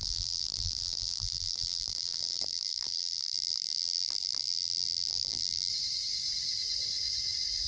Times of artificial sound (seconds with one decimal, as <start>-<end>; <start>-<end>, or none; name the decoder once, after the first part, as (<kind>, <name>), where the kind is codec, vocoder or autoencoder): 0.0-5.7 (vocoder, BigVGAN v2)